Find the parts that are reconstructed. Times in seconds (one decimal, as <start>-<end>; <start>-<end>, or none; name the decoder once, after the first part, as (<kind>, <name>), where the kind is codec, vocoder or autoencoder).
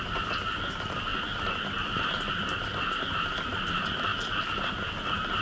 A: none